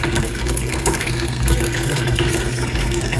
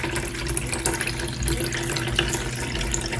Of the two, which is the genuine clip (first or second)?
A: second